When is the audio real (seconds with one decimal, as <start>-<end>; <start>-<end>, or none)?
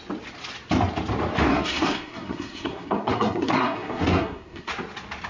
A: 0.0-1.5; 4.7-5.3